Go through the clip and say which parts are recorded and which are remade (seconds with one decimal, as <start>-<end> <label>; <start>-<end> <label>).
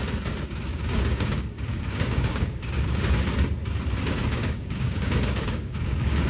0.0-0.7 recorded; 0.7-3.1 remade; 3.1-4.2 recorded; 4.2-6.3 remade